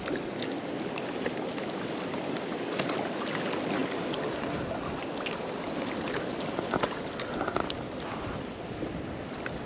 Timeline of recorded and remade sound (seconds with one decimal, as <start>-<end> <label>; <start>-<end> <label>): 0.0-9.7 recorded